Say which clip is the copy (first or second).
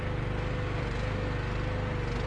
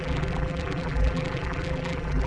second